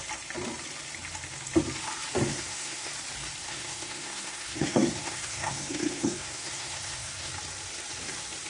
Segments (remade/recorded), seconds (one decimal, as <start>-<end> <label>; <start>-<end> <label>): 0.0-2.3 recorded; 2.3-2.9 remade; 2.9-3.4 recorded; 3.4-7.3 remade; 7.3-8.5 recorded